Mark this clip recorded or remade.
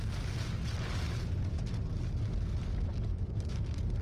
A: recorded